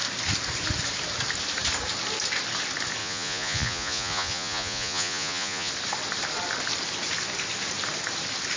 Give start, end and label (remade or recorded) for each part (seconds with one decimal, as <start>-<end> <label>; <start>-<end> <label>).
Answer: 0.0-3.0 recorded; 3.0-5.7 remade; 5.7-8.6 recorded